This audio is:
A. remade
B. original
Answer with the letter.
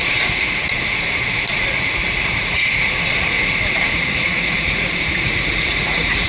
A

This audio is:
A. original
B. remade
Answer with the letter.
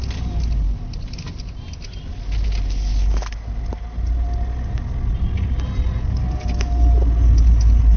A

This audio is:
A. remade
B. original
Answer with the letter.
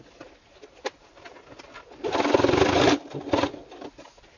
B